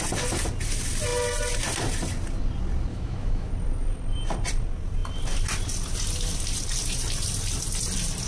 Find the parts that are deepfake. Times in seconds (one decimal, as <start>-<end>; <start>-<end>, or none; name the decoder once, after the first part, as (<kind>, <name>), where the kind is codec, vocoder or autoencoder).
2.9-3.5 (autoencoder, DAC-VAE)

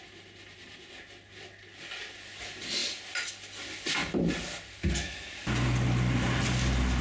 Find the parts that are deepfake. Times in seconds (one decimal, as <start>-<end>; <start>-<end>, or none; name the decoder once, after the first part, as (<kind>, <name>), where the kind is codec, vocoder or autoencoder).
none

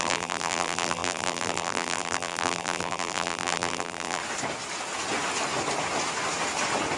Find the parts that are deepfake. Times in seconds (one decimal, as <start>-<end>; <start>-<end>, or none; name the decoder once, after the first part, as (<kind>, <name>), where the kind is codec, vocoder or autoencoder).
0.0-4.2 (vocoder, BigVGAN v2)